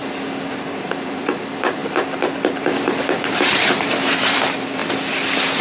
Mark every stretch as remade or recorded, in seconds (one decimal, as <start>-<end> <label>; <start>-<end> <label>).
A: 0.0-0.5 recorded; 0.5-1.8 remade; 1.8-2.8 recorded; 2.8-4.8 remade; 4.8-5.6 recorded